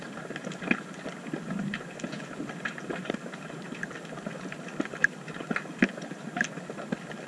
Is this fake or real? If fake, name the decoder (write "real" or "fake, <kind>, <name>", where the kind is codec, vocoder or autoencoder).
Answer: real